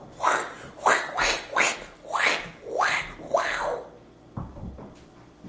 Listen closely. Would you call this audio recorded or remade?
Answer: recorded